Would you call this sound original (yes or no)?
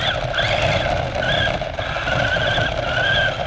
yes